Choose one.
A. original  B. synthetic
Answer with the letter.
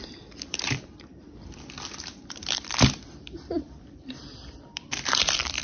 B